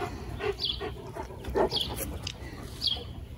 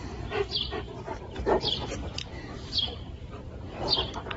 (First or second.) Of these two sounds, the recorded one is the first